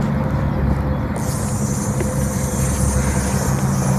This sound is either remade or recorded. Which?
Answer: recorded